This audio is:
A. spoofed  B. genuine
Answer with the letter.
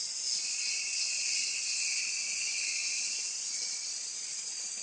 B